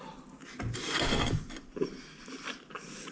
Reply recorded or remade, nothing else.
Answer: recorded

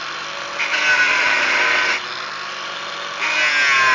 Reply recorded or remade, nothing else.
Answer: recorded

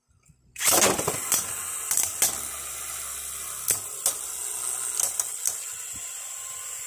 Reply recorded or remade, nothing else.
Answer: recorded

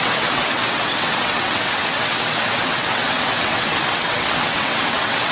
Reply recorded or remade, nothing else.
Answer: remade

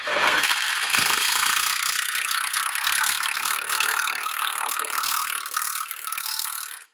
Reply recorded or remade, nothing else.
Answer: remade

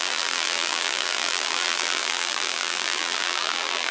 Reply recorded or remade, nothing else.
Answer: remade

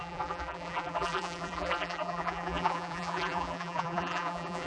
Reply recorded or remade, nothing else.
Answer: remade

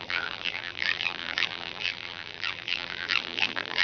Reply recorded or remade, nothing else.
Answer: remade